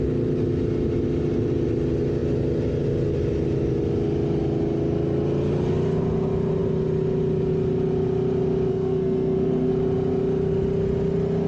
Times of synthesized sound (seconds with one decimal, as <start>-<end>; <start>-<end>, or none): 8.7-9.7